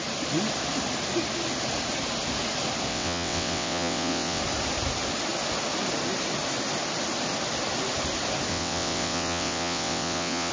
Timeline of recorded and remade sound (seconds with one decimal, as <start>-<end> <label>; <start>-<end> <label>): 0.0-2.9 recorded; 2.9-4.4 remade; 4.4-8.5 recorded; 8.5-10.5 remade